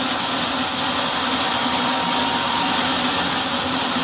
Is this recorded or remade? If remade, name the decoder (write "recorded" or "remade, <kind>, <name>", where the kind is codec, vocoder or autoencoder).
recorded